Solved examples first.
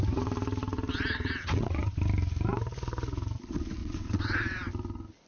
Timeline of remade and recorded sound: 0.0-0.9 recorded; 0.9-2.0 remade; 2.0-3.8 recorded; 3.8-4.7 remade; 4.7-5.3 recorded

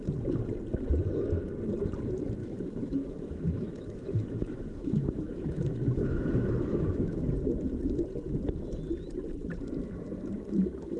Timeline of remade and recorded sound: 0.0-2.4 recorded; 2.4-7.3 remade; 7.3-11.0 recorded

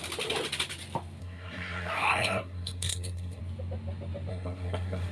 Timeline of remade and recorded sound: 0.0-1.2 recorded; 1.2-3.4 remade; 3.4-4.3 recorded; 4.3-5.1 remade